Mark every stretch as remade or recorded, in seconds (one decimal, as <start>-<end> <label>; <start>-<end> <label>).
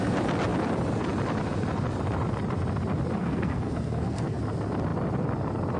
0.0-3.2 recorded; 3.2-4.4 remade; 4.4-5.8 recorded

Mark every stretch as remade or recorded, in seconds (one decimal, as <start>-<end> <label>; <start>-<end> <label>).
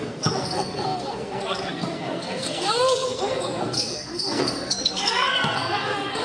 0.0-6.2 remade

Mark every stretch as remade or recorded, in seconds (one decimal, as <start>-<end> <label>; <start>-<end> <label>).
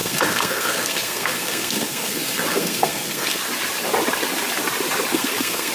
0.0-3.4 remade; 3.4-5.1 recorded; 5.1-5.7 remade